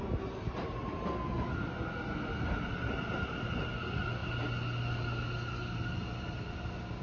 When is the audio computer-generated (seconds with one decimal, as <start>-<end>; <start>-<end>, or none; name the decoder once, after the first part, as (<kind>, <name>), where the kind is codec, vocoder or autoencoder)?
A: none

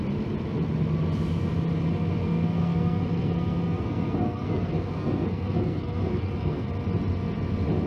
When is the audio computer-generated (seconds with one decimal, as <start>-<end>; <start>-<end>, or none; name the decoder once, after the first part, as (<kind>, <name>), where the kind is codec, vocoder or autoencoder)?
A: 2.2-6.7 (codec, SNAC)

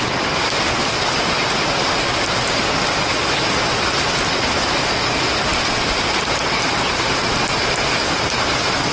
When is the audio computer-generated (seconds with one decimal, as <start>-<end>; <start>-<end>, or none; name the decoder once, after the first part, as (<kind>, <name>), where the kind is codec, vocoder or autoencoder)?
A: none

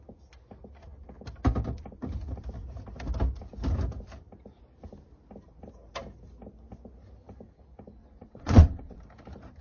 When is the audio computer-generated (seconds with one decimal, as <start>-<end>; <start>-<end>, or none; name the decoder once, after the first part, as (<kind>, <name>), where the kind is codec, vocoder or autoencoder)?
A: 8.0-9.0 (vocoder, WaveNeXt)

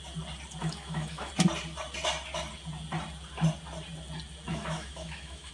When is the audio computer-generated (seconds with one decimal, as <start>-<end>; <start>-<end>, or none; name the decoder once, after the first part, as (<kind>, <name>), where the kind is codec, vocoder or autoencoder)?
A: 0.6-1.3 (autoencoder, DAC-VAE); 4.5-5.5

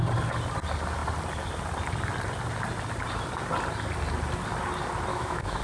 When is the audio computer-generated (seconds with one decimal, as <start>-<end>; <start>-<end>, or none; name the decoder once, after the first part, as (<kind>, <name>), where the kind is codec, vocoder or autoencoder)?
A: 5.1-5.6 (autoencoder, DAC-VAE)